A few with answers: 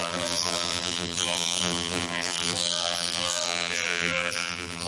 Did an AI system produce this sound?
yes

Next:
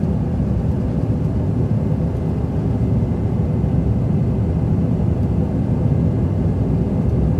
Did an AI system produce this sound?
no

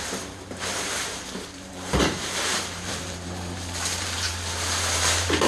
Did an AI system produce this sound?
yes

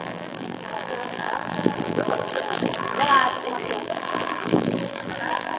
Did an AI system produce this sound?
yes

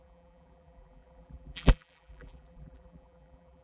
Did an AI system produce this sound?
yes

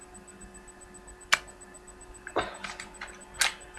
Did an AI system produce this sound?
no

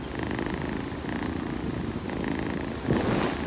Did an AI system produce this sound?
no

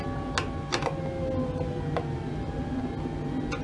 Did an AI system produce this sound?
no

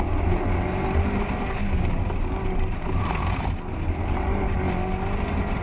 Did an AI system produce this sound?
no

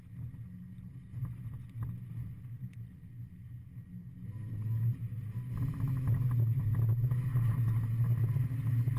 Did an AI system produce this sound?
no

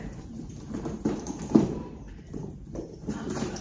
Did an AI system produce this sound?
yes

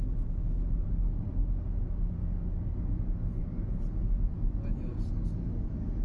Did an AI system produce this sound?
no